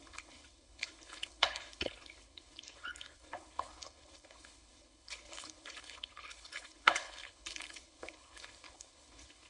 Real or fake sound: fake